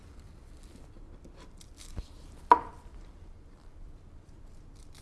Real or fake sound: fake